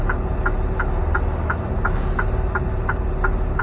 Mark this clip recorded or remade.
recorded